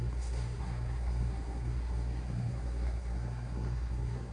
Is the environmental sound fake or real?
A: fake